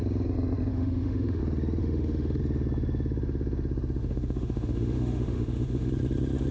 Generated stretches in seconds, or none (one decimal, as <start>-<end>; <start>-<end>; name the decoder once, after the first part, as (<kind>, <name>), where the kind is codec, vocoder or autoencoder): 0.7-1.4 (autoencoder, DAC-VAE); 1.8-2.4; 4.0-5.9